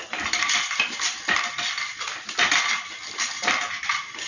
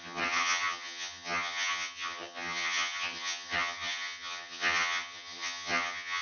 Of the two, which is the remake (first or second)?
second